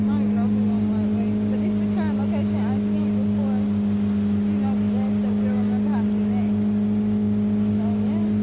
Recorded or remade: recorded